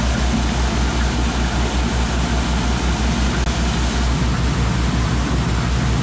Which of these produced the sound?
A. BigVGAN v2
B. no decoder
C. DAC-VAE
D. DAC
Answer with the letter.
B